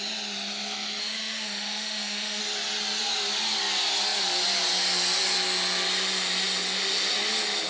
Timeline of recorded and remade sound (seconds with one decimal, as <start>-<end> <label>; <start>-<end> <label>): 0.0-1.0 recorded; 1.0-2.4 remade; 2.4-7.7 recorded

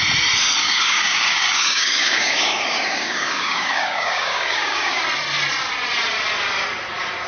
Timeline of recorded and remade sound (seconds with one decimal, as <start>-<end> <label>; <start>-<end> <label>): 0.0-0.6 recorded; 0.6-5.0 remade; 5.0-7.3 recorded